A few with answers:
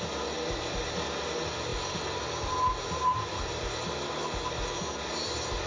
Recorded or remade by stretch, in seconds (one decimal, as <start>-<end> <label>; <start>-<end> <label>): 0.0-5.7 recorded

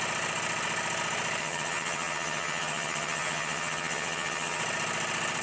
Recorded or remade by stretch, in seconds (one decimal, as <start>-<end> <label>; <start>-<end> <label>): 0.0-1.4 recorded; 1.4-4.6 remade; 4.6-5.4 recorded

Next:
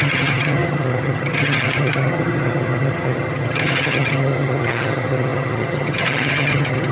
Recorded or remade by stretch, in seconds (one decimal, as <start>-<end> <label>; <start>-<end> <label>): 0.0-6.9 remade

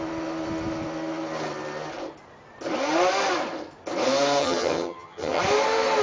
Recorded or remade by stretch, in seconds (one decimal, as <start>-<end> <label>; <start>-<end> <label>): 0.0-4.4 recorded; 4.4-5.4 remade; 5.4-6.0 recorded

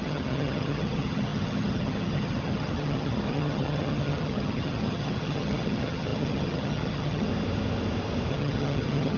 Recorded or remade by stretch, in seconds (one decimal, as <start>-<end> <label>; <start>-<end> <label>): 0.0-7.3 remade; 7.3-8.3 recorded; 8.3-9.2 remade

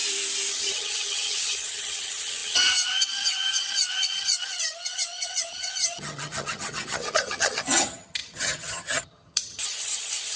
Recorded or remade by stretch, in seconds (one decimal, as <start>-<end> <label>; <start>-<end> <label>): 0.0-0.5 recorded; 0.5-10.4 remade